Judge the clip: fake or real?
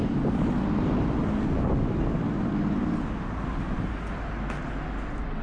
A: real